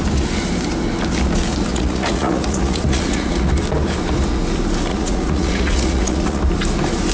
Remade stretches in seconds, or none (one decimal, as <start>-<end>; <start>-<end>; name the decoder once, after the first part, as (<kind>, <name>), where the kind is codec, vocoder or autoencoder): 1.7-3.5 (vocoder, Vocos); 4.9-6.4